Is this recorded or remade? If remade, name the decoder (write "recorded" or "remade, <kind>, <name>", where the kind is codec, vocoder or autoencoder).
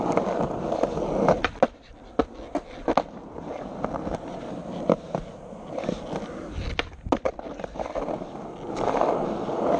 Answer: recorded